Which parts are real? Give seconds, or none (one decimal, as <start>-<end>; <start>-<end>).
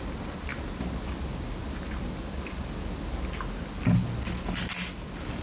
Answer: 0.0-5.4